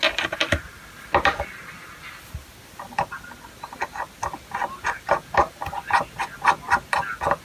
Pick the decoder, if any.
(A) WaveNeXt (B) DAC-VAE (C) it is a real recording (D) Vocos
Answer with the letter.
C